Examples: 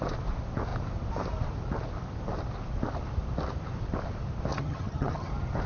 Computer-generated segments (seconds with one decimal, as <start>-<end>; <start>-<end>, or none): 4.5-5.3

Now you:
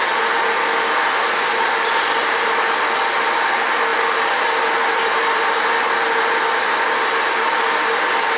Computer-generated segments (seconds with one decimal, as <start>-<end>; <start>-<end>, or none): none

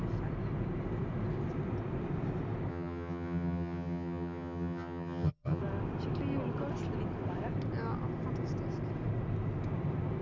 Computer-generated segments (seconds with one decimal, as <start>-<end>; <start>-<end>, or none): 2.7-5.6

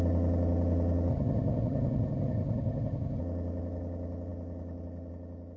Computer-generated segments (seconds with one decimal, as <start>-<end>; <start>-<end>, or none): 1.1-3.2